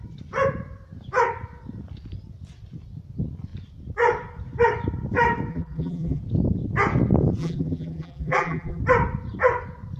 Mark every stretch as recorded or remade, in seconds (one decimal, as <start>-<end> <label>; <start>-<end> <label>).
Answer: 0.0-5.5 recorded; 5.5-6.2 remade; 6.2-7.4 recorded; 7.4-8.8 remade; 8.8-10.0 recorded